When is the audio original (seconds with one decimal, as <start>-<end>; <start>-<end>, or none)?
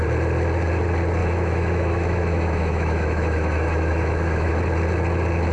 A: 0.0-1.2; 4.5-5.5